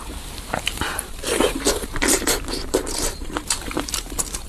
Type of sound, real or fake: fake